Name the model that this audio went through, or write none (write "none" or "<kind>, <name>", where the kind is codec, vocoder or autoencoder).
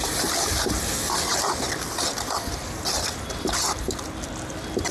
vocoder, BigVGAN v2